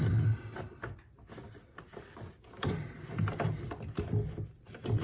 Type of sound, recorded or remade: recorded